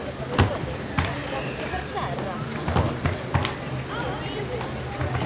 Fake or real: real